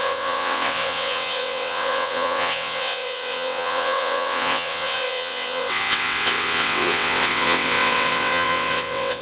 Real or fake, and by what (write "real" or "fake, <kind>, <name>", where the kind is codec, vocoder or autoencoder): fake, vocoder, WaveNeXt